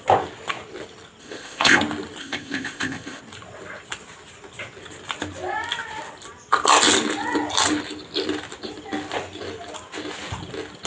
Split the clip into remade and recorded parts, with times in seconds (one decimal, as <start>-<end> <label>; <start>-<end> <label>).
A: 0.0-1.2 recorded; 1.2-1.8 remade; 1.8-2.2 recorded; 2.2-3.2 remade; 3.2-10.9 recorded